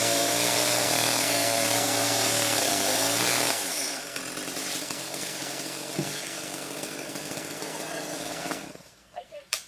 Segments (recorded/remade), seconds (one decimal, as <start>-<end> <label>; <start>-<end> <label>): 0.0-4.2 remade; 4.2-4.8 recorded; 4.8-9.7 remade